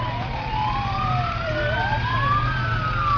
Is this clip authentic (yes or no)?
yes